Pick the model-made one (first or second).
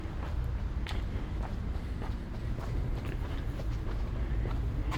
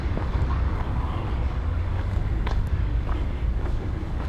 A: second